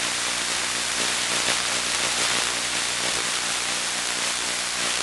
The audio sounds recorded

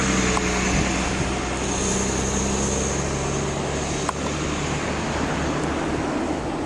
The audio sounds recorded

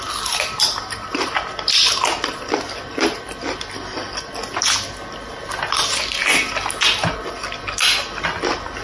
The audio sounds recorded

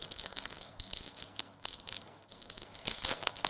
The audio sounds remade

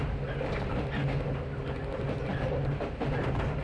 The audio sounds recorded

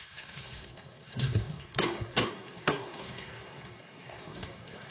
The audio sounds remade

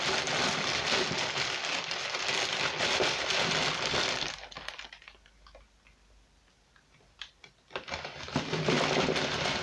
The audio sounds recorded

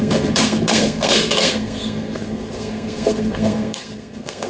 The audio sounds remade